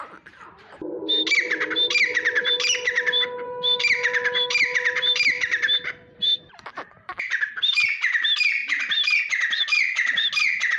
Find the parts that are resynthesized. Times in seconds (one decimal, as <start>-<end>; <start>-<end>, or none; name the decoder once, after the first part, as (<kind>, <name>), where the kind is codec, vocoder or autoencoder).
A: 2.4-7.6 (vocoder, BigVGAN v2)